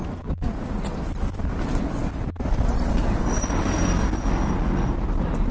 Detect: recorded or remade recorded